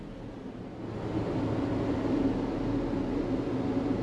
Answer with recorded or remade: recorded